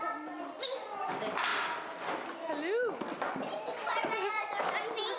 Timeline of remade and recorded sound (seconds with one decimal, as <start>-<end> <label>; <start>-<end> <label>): 0.0-5.2 recorded